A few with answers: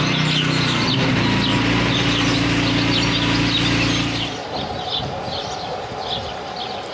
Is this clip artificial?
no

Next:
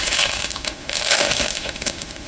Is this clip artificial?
yes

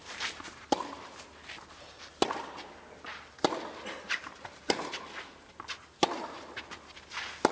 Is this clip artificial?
no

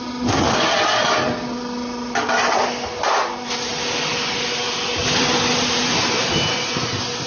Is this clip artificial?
no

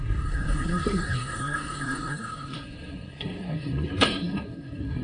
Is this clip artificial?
yes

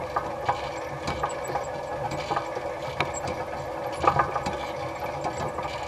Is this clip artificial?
no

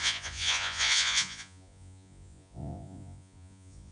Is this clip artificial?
yes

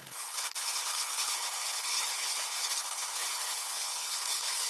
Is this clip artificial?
yes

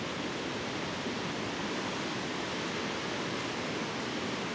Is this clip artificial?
no